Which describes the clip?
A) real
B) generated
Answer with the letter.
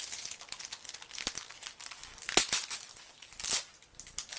A